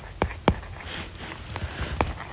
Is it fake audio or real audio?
real